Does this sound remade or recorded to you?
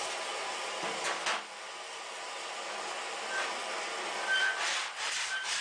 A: recorded